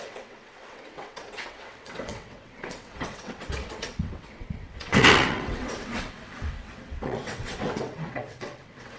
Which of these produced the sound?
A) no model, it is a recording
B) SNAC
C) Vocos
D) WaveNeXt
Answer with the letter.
D